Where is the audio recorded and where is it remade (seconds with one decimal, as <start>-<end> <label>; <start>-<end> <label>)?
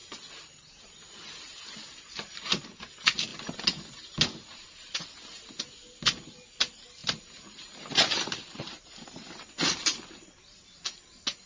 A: 0.0-3.3 recorded; 3.3-3.8 remade; 3.8-7.0 recorded; 7.0-9.5 remade; 9.5-11.5 recorded